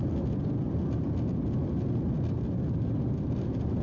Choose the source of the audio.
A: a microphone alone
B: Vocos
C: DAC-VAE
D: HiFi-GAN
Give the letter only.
A